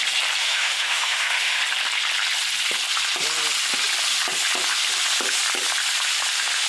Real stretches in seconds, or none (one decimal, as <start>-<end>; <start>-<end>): 0.0-0.4; 1.6-6.7